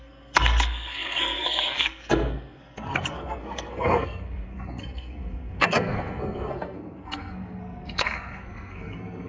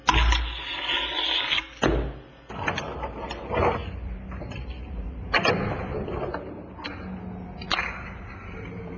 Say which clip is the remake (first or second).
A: first